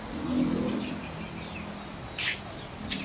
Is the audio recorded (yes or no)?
yes